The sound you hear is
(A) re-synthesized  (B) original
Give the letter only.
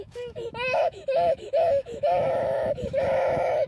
A